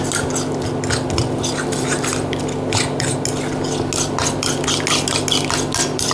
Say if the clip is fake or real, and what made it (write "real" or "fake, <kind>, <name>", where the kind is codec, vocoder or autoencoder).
real